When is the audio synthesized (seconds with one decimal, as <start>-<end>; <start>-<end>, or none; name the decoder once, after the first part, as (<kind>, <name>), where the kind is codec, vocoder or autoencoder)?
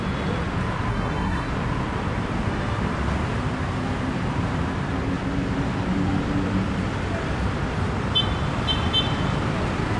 0.9-1.5 (codec, SNAC)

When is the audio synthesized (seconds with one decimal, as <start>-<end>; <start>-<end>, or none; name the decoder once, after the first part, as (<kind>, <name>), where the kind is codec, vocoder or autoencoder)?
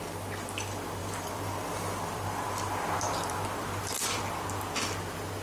1.0-4.2 (vocoder, BigVGAN v2)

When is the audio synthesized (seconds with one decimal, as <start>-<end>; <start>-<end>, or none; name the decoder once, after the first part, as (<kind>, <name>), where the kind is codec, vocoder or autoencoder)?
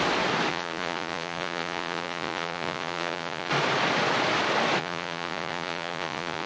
0.5-3.5 (vocoder, Vocos); 4.8-6.5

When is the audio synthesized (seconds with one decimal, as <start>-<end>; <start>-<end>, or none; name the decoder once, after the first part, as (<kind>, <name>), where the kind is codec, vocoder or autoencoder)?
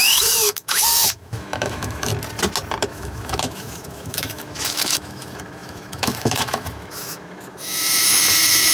0.0-2.1 (autoencoder, DAC-VAE); 2.8-8.7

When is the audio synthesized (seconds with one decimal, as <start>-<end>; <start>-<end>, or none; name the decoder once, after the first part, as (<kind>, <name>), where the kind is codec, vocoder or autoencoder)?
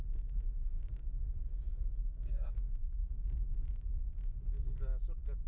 1.7-3.1 (codec, SNAC)